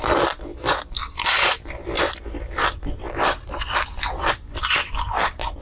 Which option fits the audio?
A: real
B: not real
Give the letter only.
B